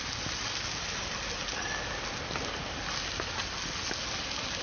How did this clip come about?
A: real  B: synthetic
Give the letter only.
A